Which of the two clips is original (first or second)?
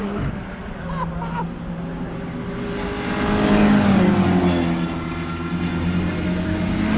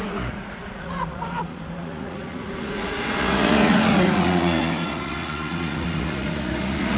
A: first